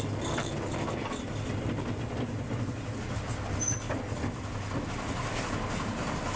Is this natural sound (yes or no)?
yes